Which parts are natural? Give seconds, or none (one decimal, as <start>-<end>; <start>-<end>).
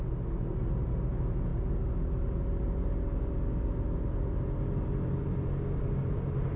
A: 0.0-6.6